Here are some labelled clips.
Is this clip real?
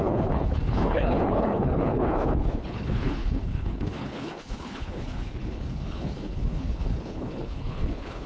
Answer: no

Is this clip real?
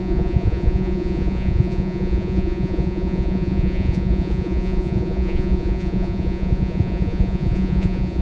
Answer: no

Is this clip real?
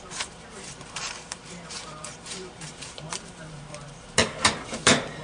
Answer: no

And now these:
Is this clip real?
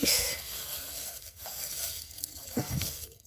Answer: no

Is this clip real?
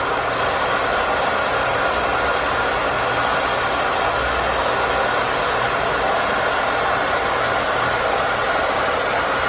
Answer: yes